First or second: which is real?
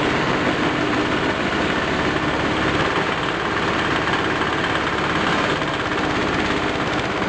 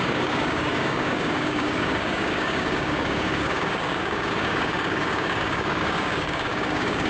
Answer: first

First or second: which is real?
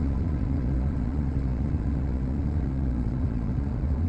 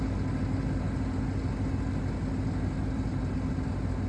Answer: second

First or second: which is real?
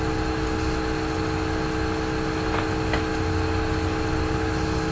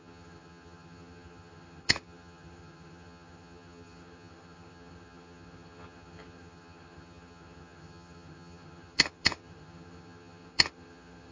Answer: first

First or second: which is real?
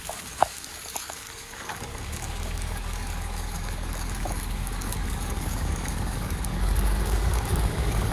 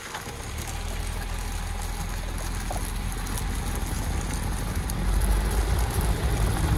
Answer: second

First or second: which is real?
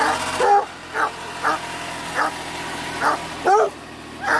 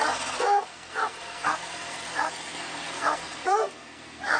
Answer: first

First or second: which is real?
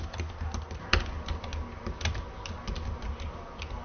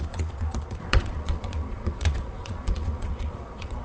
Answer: first